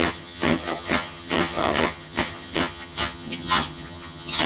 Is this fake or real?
fake